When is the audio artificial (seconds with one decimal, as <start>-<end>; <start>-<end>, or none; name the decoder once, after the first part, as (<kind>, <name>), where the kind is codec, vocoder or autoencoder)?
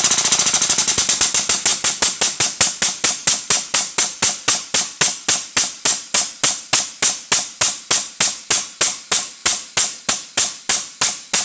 none